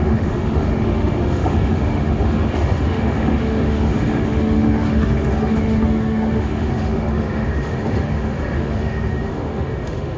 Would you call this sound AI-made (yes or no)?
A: yes